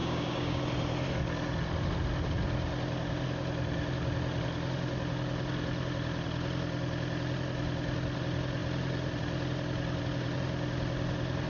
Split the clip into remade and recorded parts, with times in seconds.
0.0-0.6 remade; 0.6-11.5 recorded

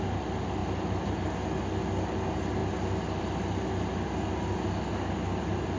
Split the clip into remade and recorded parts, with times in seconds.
0.0-0.6 recorded; 0.6-1.1 remade; 1.1-5.8 recorded

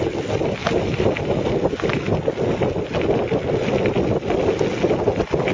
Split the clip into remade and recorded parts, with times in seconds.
0.0-5.5 recorded

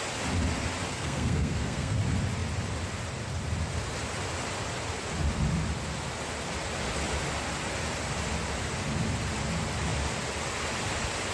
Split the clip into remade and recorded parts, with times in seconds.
0.0-0.9 recorded; 0.9-2.0 remade; 2.0-11.3 recorded

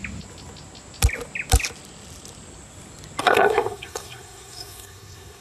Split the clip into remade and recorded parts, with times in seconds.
0.0-3.2 recorded; 3.2-5.4 remade